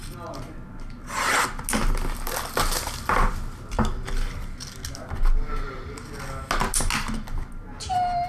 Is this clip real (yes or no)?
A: yes